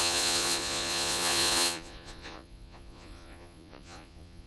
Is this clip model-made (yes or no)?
yes